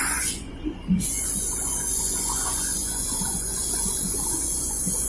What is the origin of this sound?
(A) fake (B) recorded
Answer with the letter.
A